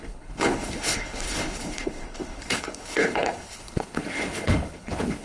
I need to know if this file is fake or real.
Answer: fake